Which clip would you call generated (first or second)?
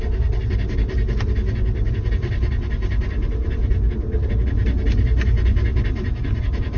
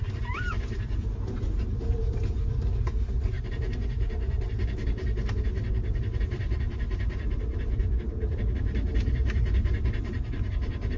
second